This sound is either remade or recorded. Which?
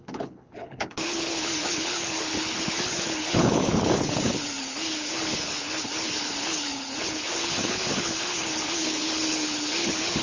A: remade